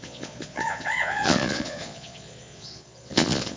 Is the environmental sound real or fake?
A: fake